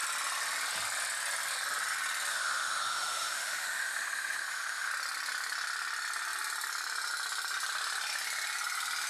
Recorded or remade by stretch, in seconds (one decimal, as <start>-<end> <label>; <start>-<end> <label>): 0.0-2.3 recorded; 2.3-4.9 remade; 4.9-9.1 recorded